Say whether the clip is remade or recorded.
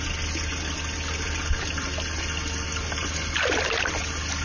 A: recorded